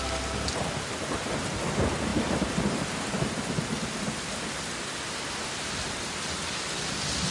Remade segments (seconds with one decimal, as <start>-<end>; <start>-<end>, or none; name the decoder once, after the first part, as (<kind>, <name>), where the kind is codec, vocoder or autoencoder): none